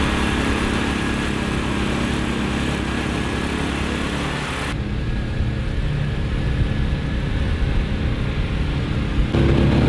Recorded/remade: recorded